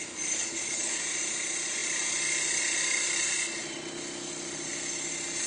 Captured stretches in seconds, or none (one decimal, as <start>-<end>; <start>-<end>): 0.0-0.4; 1.0-5.5